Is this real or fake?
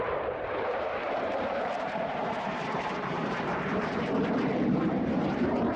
fake